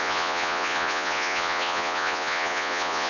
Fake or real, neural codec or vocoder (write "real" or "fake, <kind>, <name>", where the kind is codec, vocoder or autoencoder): fake, vocoder, Vocos